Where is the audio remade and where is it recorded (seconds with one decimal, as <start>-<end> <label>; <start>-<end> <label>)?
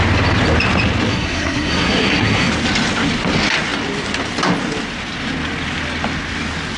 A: 0.0-1.1 recorded; 1.1-2.5 remade; 2.5-6.8 recorded